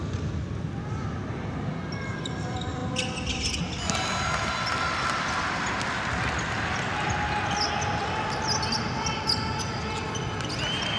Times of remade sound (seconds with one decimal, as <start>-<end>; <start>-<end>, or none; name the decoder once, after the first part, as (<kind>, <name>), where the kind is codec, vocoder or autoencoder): none